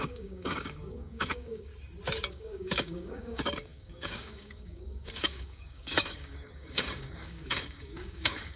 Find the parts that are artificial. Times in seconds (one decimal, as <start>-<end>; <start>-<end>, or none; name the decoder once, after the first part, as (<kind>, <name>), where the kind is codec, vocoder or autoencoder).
0.0-1.7 (codec, DAC); 2.3-8.6